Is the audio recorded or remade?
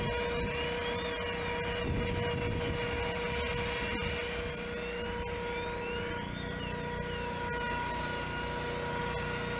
recorded